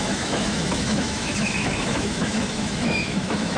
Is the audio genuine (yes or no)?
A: no